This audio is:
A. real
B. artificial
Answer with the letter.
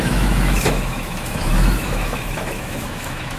B